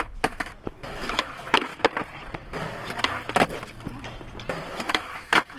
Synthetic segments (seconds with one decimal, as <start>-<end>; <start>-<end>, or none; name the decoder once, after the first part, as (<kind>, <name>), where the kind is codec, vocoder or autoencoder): 0.0-1.7 (autoencoder, DAC-VAE); 4.7-5.6